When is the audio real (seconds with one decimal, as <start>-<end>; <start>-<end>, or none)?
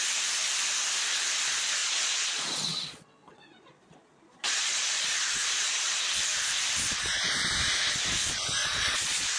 0.0-1.8; 6.0-8.6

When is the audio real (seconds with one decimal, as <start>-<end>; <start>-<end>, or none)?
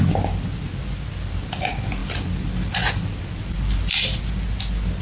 0.0-5.0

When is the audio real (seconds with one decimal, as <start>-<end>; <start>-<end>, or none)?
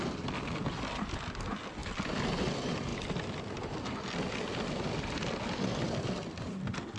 0.0-7.0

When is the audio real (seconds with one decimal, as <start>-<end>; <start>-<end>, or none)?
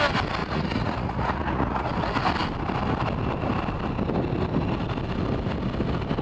0.0-0.4; 1.9-6.2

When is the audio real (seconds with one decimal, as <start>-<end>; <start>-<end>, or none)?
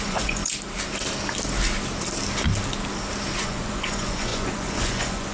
0.4-3.4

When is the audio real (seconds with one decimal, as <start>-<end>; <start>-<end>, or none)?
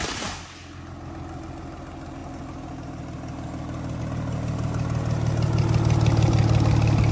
0.0-7.1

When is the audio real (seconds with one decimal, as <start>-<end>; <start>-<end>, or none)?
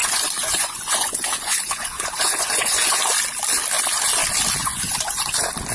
3.0-4.6; 5.3-5.7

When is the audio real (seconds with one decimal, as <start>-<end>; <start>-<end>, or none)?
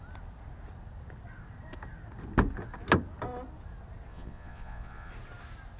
0.0-4.1; 5.1-5.8